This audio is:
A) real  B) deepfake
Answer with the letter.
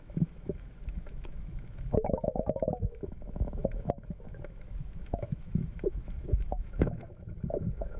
B